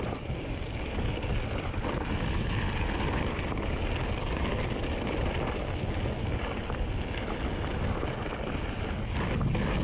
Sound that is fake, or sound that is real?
real